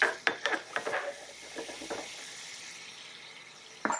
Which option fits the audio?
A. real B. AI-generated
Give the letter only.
A